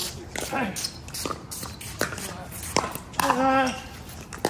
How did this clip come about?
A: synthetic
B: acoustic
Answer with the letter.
B